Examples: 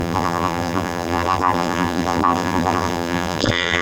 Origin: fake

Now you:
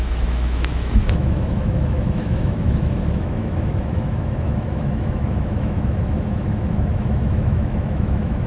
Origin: fake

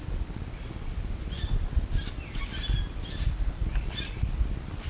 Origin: real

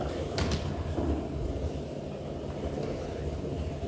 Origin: real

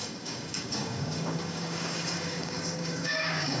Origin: fake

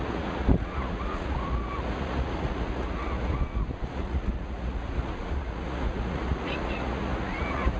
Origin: fake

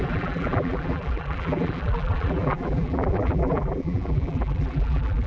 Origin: fake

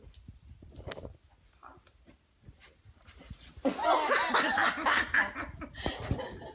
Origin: real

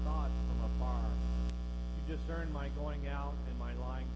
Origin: real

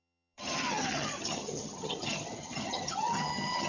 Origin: fake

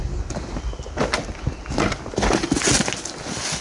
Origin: real